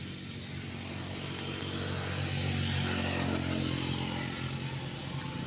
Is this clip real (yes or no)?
yes